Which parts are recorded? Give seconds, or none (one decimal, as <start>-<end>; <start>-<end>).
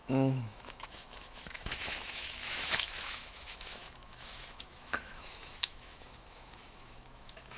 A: none